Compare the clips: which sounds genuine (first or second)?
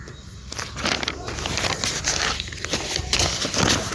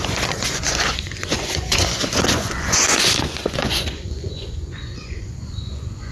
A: first